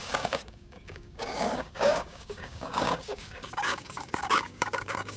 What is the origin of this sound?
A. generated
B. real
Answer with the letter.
A